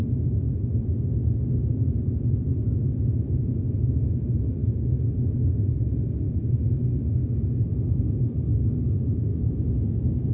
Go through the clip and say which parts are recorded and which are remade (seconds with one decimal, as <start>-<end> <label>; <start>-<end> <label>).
0.0-4.6 recorded; 4.6-5.1 remade; 5.1-9.3 recorded; 9.3-10.3 remade